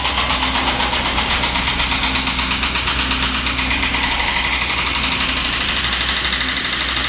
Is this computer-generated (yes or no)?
no